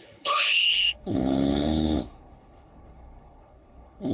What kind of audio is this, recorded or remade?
remade